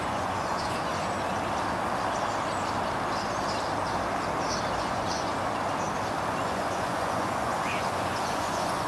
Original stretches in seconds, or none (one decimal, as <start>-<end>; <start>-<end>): 0.9-4.8; 5.3-6.4